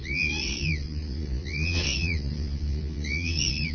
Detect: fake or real fake